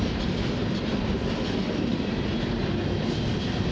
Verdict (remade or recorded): recorded